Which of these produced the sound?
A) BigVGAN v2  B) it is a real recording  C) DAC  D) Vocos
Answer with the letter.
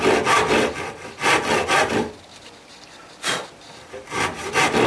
B